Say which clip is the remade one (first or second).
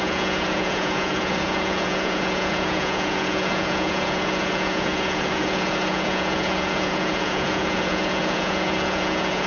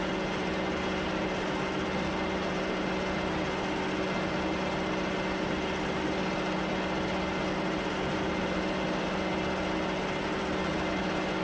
first